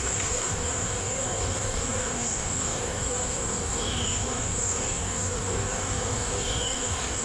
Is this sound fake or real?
fake